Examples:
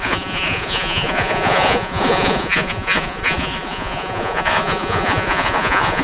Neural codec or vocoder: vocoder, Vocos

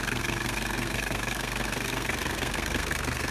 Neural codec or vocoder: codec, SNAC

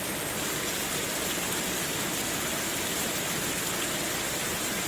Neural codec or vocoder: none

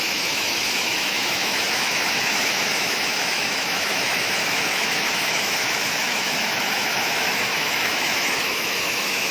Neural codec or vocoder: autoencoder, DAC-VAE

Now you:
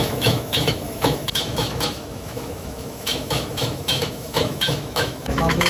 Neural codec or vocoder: autoencoder, DAC-VAE